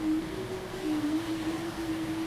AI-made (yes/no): yes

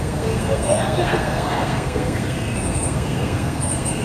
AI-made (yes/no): yes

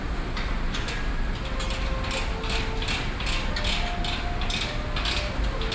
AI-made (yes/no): no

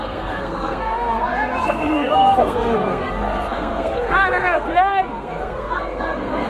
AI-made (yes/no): yes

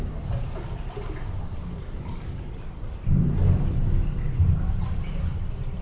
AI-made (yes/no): no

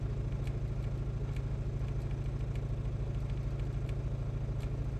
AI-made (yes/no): no